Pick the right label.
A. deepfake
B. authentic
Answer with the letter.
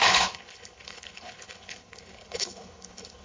A